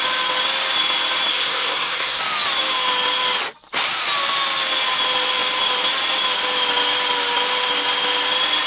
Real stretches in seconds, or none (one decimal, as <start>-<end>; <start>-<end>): 0.0-1.3; 2.2-8.7